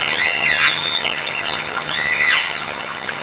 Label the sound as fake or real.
fake